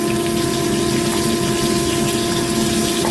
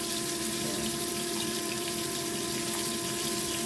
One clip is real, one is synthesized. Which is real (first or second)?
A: first